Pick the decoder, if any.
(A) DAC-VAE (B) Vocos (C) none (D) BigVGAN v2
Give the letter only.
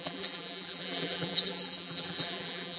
D